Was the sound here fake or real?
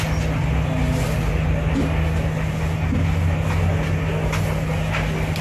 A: real